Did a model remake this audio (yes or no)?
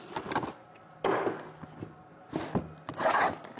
no